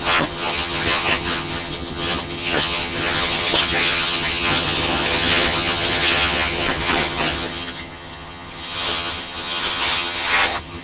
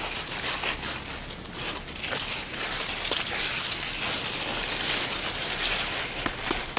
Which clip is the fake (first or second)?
first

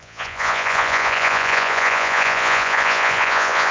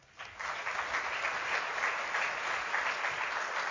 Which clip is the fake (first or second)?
first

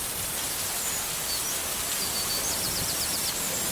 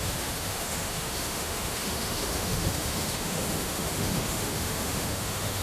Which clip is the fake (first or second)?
second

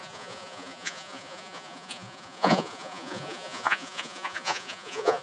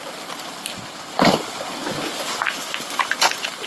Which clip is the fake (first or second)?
first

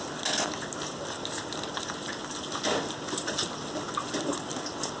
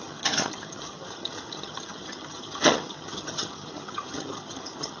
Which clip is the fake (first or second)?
second